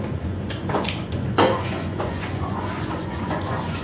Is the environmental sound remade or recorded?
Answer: remade